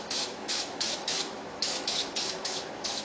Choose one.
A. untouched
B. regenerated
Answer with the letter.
B